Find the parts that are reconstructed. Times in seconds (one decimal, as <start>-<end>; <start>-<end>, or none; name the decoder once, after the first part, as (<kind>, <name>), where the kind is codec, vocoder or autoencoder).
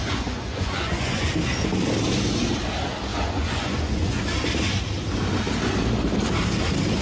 0.0-1.3 (vocoder, Vocos); 3.1-4.2